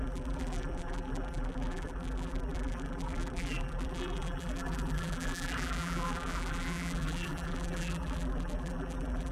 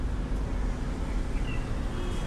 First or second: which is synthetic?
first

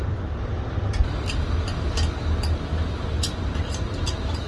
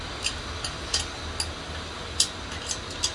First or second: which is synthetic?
first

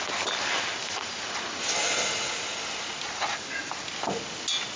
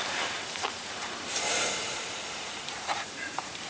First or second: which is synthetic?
second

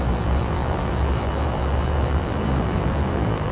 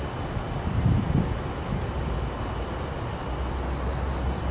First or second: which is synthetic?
first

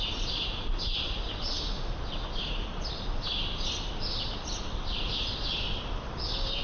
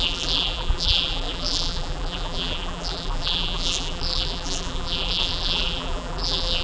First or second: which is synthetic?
second